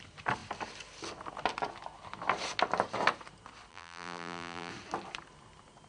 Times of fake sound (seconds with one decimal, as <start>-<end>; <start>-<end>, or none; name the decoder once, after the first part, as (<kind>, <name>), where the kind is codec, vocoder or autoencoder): 3.7-4.7 (vocoder, BigVGAN v2)